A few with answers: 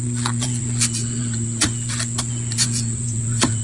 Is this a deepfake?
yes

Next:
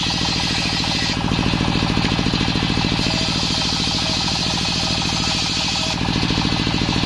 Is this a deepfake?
no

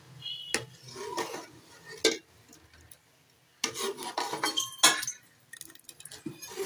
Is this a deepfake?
no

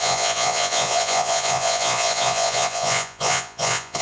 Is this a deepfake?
yes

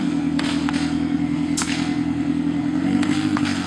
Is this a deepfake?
yes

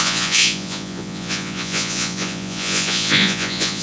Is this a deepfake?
yes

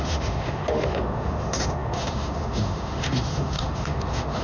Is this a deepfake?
yes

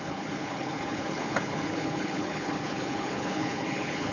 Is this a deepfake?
yes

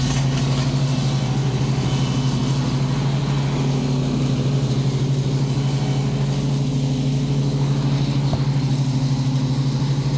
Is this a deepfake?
no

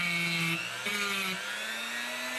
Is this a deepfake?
no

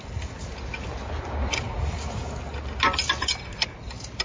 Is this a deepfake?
no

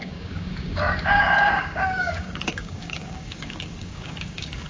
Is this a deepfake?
yes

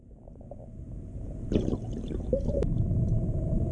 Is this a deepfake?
yes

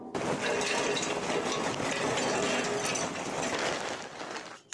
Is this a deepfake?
no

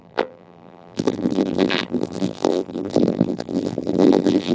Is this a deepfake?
yes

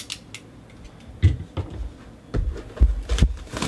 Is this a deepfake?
no